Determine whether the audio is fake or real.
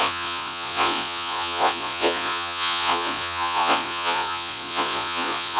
fake